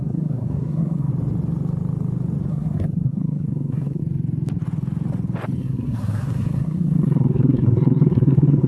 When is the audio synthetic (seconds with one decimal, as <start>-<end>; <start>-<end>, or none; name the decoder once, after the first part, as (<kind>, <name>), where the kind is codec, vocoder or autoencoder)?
0.0-1.1 (codec, SNAC); 2.5-4.0; 5.6-8.7